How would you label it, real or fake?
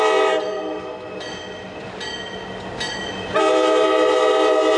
real